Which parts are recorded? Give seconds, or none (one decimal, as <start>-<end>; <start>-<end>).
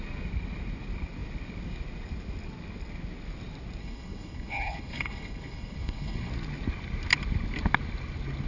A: 0.0-3.8; 6.3-8.5